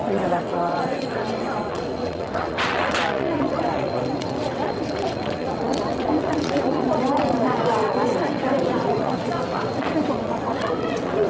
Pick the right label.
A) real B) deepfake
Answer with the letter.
B